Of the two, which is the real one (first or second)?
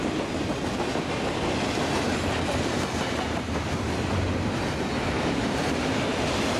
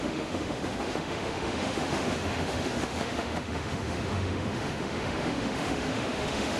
first